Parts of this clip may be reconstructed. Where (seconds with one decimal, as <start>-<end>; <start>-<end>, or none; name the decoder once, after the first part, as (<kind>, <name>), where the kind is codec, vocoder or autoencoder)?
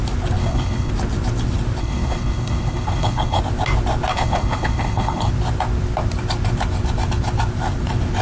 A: 0.4-0.9 (codec, HILCodec); 1.8-3.4; 4.1-5.3